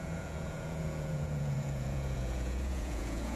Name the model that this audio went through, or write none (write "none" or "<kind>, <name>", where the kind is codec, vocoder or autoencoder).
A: vocoder, Vocos